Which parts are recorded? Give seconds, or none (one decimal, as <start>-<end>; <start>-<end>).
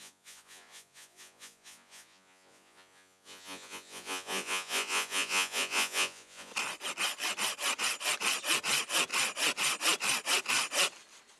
6.5-11.4